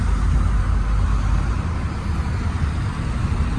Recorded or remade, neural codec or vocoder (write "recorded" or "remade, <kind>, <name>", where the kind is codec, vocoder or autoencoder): recorded